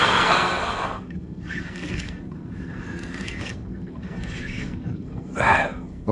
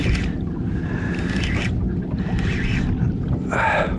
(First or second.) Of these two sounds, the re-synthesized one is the first